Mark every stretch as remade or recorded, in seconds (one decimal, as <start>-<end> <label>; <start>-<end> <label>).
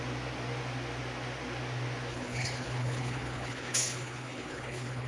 0.0-2.1 recorded; 2.1-5.1 remade